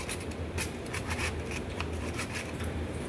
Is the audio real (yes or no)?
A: no